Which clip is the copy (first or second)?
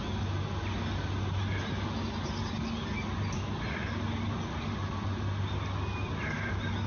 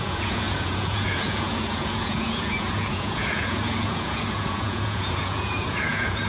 second